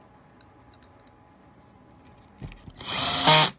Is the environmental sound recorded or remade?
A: recorded